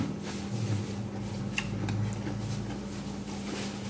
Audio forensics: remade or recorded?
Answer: recorded